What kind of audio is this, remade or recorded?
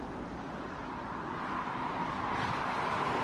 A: recorded